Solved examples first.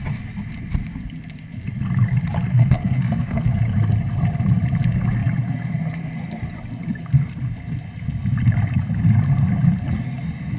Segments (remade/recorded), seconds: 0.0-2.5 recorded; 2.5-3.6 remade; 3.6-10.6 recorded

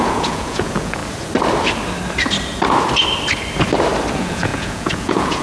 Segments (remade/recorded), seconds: 0.0-1.0 remade; 1.0-4.1 recorded; 4.1-5.4 remade

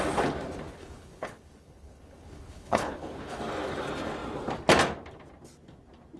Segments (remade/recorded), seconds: 0.0-0.7 recorded; 0.7-3.4 remade; 3.4-6.2 recorded

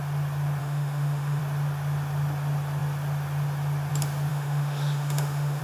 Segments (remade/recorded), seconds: 0.0-0.6 recorded; 0.6-1.4 remade; 1.4-4.3 recorded; 4.3-5.6 remade